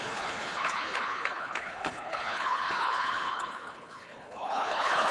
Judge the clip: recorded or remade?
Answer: remade